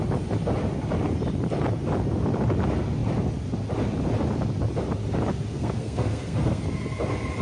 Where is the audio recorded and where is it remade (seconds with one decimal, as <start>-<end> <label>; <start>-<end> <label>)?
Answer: 0.0-5.5 recorded; 5.5-6.6 remade; 6.6-7.4 recorded